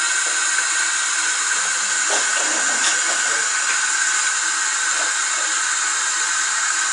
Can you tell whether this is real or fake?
real